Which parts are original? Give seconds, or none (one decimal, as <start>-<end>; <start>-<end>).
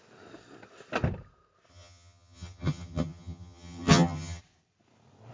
0.0-1.7; 4.4-5.3